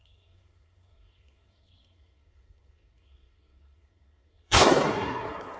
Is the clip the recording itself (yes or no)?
no